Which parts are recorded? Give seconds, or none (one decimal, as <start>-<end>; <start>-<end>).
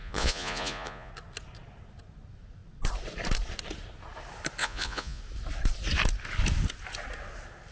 1.1-4.6; 5.2-7.7